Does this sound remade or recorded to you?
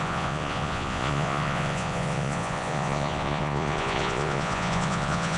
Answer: remade